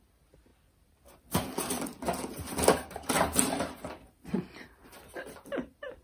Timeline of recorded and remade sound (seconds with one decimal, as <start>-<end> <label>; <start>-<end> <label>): 0.0-6.0 recorded